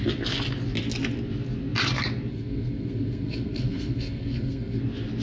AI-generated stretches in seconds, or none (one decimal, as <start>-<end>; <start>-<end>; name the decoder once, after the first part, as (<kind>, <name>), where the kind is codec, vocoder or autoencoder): 2.3-4.8 (codec, SNAC)